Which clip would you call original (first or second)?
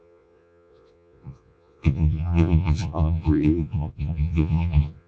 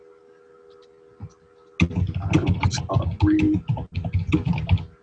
second